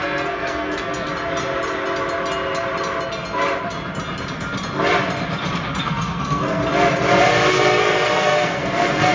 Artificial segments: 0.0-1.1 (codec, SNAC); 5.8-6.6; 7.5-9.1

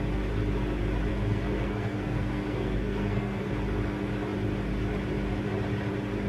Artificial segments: 1.1-3.5 (codec, SNAC)

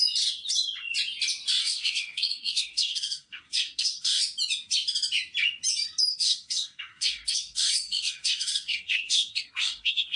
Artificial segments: 1.6-4.2 (codec, SNAC); 6.1-10.2

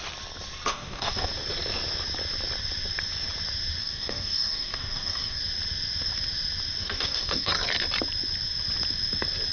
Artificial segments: 0.7-1.3 (codec, DAC); 3.8-5.4; 6.8-7.5

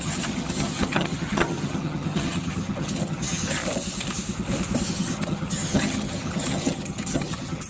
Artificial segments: 0.0-3.6 (vocoder, HiFi-GAN); 4.9-7.7